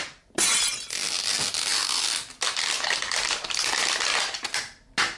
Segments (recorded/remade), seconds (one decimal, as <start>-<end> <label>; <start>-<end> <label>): 0.0-5.2 recorded